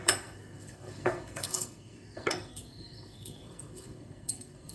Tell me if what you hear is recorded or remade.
remade